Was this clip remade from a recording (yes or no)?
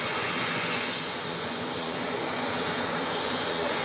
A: yes